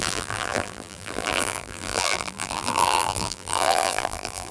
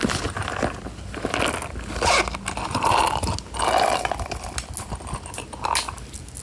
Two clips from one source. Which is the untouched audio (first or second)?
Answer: second